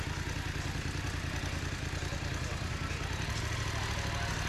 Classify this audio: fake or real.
real